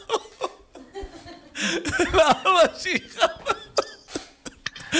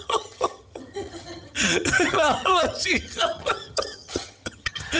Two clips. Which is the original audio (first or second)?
first